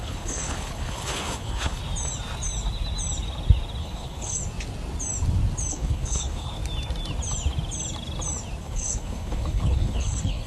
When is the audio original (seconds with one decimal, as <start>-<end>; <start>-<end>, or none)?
1.8-3.8; 4.4-5.7; 6.6-8.6